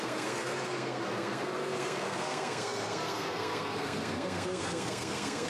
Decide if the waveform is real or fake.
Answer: fake